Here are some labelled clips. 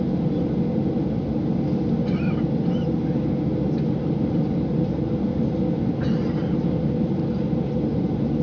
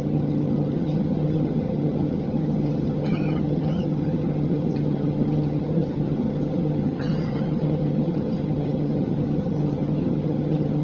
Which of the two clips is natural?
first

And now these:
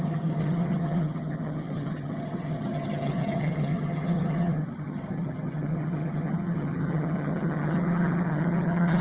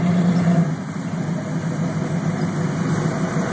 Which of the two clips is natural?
second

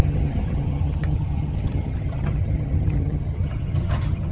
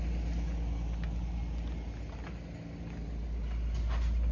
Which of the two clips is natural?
second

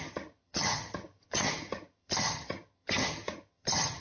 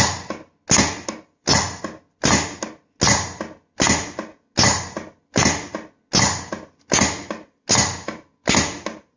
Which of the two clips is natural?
second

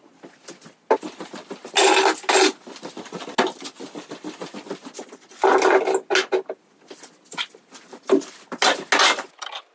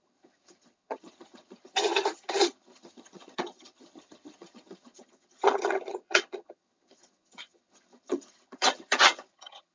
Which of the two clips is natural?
first